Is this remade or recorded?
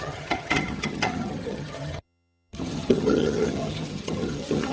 remade